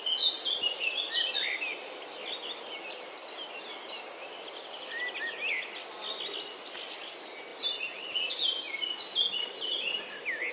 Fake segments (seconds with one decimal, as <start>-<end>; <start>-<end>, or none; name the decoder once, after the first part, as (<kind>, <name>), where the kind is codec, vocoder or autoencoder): none